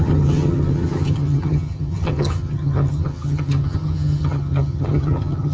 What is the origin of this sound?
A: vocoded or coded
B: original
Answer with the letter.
A